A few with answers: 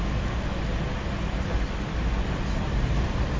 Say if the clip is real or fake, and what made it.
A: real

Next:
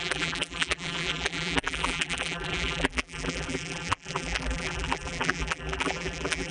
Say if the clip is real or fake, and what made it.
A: fake, vocoder, BigVGAN v2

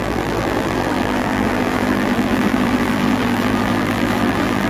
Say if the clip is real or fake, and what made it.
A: fake, vocoder, BigVGAN v2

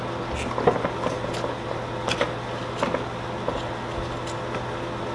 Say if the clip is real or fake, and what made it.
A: real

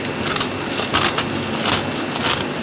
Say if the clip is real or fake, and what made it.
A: real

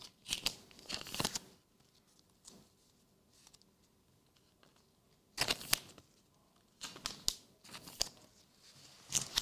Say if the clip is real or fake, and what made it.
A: real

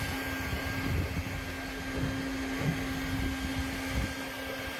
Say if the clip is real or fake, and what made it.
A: real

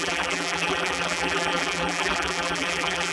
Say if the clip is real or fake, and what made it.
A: fake, vocoder, BigVGAN v2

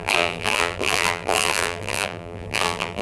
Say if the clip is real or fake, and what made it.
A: fake, vocoder, BigVGAN v2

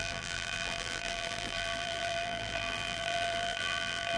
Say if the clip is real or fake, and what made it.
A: fake, vocoder, BigVGAN v2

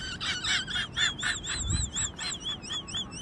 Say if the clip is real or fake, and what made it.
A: real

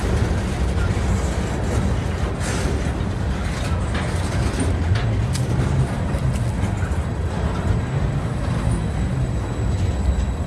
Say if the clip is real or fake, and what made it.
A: real